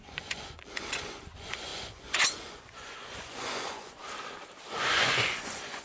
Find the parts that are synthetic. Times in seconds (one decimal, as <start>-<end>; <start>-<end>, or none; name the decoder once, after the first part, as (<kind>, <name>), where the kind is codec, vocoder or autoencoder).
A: 0.0-4.0 (vocoder, Vocos); 4.7-5.8